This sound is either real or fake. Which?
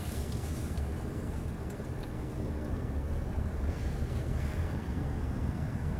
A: fake